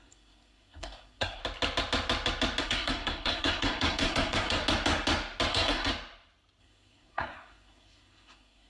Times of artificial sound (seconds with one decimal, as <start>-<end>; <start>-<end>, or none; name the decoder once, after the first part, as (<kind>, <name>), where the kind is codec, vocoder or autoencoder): 0.0-1.4 (codec, SNAC); 2.6-4.6; 5.5-5.9; 6.6-8.7